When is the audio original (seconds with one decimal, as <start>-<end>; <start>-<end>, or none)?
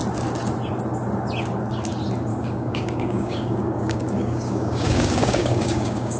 0.0-2.3